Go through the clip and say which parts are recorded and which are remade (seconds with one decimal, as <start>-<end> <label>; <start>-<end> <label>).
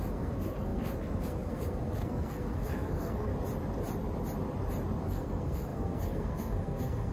0.0-3.3 remade; 3.3-5.0 recorded; 5.0-7.1 remade